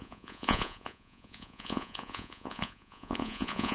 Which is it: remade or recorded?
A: remade